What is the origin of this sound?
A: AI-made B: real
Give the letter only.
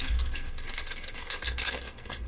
A